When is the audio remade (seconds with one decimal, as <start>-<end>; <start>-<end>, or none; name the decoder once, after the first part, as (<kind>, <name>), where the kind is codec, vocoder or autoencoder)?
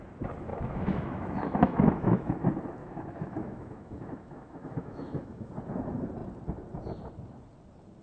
0.5-2.4 (autoencoder, DAC-VAE); 2.8-5.5